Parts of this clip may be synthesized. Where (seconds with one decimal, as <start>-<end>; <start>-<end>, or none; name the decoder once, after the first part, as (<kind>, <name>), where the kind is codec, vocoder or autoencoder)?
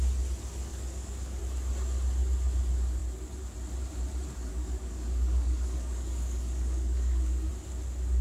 0.7-1.4 (codec, DAC); 4.5-7.5